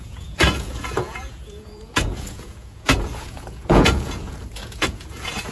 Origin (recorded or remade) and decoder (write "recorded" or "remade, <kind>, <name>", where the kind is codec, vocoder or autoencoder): remade, vocoder, Vocos